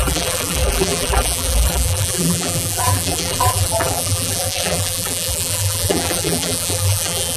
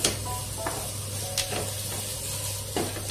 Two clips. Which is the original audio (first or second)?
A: second